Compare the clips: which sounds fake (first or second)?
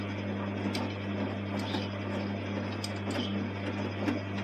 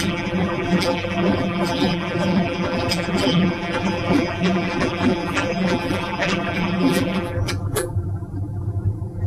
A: second